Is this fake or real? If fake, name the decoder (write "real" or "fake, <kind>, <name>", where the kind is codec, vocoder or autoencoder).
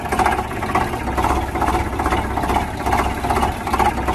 real